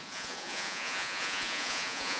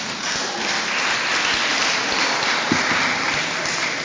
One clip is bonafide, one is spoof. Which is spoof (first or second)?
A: first